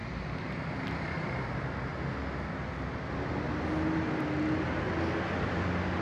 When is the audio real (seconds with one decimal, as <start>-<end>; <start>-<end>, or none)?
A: 1.9-5.5